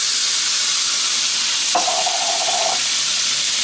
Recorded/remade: recorded